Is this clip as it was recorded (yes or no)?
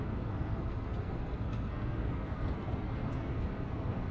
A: no